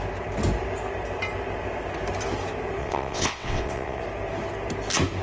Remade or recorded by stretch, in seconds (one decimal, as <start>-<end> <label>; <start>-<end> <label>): 0.0-2.8 recorded; 2.8-4.0 remade; 4.0-5.2 recorded